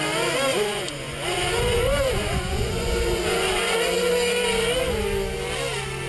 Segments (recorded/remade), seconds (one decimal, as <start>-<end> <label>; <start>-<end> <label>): 0.0-0.5 recorded; 0.5-4.0 remade; 4.0-6.1 recorded